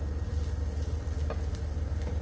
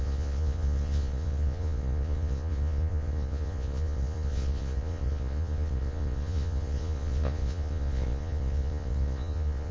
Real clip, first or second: first